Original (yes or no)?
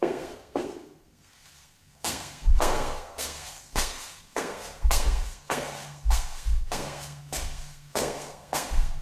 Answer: no